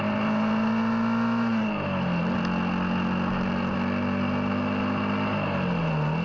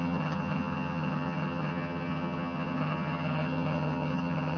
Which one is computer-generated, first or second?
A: second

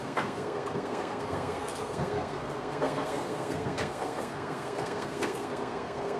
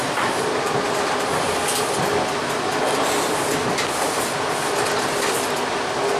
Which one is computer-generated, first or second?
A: first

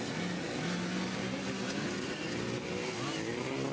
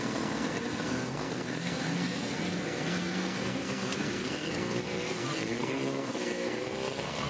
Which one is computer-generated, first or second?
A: second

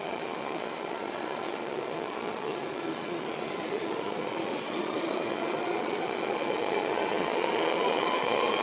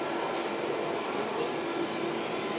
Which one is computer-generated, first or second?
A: first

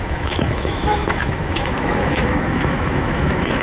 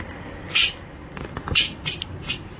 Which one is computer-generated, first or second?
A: first